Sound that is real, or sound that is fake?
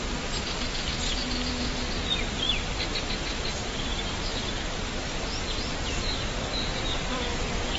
real